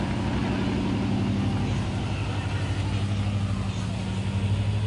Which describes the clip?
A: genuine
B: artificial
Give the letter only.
A